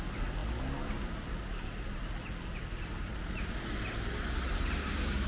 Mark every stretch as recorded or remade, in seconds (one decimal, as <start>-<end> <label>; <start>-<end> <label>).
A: 0.0-5.3 recorded

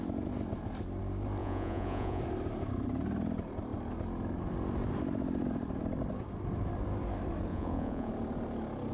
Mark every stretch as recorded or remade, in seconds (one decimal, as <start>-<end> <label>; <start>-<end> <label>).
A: 0.0-1.4 recorded; 1.4-2.2 remade; 2.2-7.5 recorded; 7.5-8.1 remade; 8.1-8.9 recorded

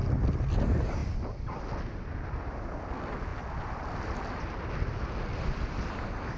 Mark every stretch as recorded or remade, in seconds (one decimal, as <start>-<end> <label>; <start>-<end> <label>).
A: 0.0-6.4 recorded

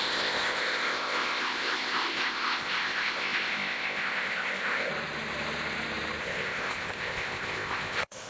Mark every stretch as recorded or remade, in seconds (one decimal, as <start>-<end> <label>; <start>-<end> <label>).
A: 0.0-4.9 remade; 4.9-6.2 recorded; 6.2-8.3 remade

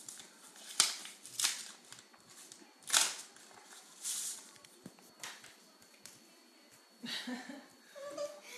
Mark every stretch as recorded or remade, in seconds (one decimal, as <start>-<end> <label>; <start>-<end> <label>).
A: 0.0-2.1 remade; 2.1-3.8 recorded; 3.8-8.6 remade

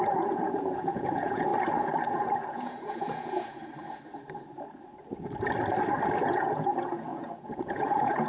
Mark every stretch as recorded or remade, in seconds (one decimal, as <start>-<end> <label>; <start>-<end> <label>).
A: 0.0-1.5 remade; 1.5-2.1 recorded; 2.1-3.6 remade; 3.6-6.3 recorded; 6.3-8.3 remade